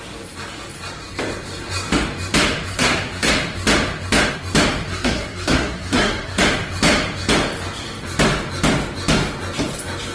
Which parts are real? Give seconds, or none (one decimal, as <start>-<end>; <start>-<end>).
0.0-2.7; 3.3-4.9; 6.4-10.1